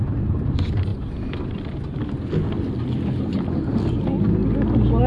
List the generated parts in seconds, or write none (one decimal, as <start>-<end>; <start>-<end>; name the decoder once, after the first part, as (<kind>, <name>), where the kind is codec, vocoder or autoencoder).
none